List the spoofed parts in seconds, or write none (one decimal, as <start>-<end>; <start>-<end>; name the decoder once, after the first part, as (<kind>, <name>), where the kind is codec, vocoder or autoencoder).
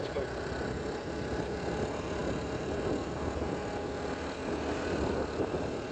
none